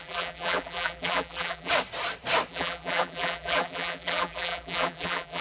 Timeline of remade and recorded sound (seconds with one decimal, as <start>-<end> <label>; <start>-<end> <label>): 0.0-1.7 remade; 1.7-2.5 recorded; 2.5-5.4 remade